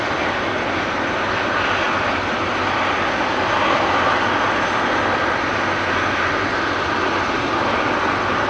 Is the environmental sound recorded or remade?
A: recorded